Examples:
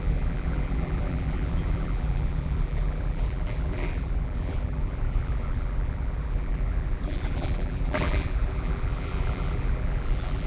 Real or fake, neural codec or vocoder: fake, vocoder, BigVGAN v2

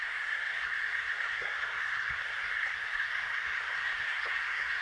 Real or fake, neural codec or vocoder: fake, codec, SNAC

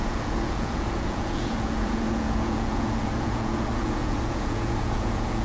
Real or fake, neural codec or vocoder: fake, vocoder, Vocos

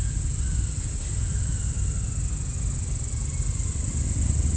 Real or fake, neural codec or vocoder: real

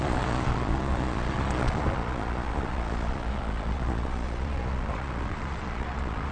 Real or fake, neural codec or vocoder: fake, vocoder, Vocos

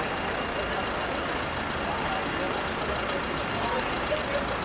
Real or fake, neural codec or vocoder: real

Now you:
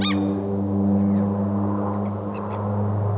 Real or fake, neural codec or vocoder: real